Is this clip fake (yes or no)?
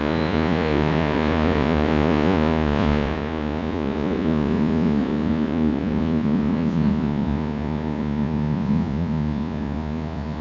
yes